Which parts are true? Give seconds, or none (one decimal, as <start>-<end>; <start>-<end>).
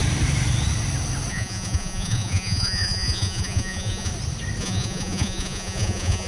0.0-1.3; 4.1-4.6